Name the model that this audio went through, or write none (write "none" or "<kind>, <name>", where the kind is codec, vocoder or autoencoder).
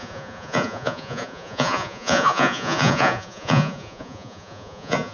vocoder, Vocos